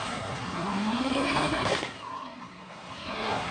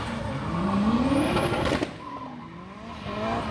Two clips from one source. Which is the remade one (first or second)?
first